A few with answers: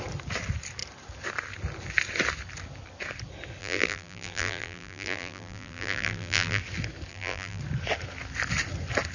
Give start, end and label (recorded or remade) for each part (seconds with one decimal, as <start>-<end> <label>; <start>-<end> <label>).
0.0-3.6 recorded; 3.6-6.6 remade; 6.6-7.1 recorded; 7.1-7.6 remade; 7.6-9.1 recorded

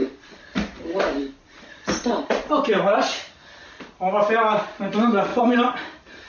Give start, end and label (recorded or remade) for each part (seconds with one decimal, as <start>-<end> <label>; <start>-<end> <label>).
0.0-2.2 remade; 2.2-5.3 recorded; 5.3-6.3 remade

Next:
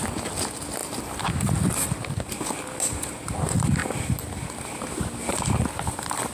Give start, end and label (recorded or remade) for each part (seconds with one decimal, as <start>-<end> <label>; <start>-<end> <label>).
0.0-6.3 recorded

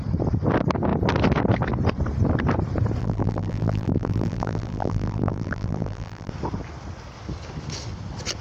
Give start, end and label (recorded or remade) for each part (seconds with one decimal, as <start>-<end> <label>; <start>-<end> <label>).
0.0-3.0 recorded; 3.0-6.3 remade; 6.3-8.4 recorded